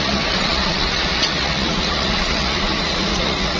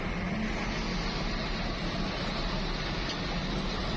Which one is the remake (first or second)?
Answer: first